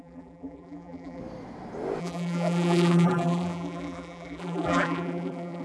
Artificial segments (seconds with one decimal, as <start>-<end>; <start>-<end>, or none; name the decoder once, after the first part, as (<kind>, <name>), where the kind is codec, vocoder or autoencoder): 0.0-1.2 (vocoder, BigVGAN v2); 2.0-5.6